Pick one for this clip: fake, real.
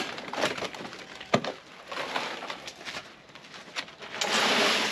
real